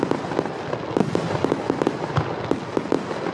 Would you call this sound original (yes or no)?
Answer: yes